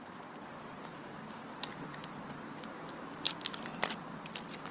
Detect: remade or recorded recorded